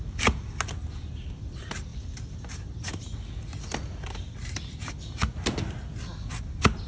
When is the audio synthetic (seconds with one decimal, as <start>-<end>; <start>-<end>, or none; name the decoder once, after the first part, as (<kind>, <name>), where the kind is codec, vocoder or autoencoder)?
none

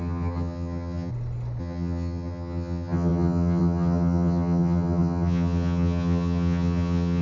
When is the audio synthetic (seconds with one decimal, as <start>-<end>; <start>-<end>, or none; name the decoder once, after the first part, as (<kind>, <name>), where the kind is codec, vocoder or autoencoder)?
0.0-1.1 (vocoder, HiFi-GAN); 1.6-7.2

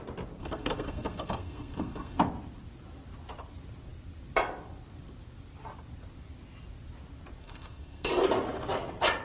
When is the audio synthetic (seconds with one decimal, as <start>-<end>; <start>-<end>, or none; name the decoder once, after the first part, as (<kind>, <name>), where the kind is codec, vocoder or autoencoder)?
0.4-2.2 (codec, SNAC); 7.4-8.1

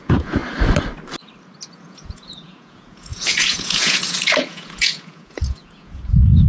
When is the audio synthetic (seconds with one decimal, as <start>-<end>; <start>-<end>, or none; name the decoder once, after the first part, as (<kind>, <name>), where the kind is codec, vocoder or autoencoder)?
0.0-0.4 (vocoder, Vocos); 1.7-6.5